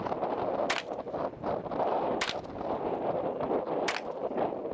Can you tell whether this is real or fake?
real